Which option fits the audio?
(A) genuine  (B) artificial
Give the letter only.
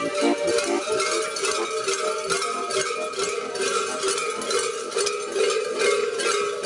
A